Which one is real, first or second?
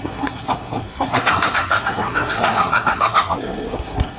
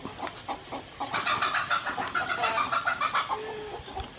second